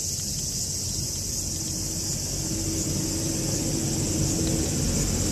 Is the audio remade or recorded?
recorded